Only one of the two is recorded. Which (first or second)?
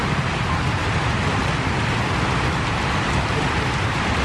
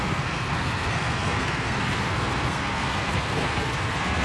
first